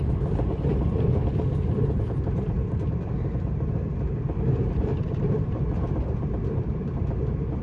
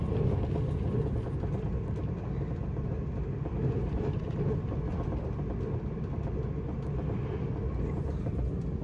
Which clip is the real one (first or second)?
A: second